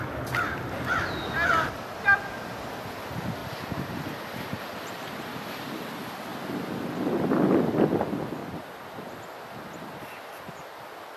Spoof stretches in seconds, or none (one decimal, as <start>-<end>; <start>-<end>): 3.4-5.5